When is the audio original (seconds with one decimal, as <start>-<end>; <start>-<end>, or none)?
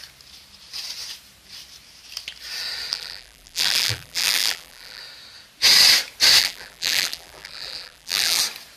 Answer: 0.0-2.9; 5.0-6.4; 8.4-8.8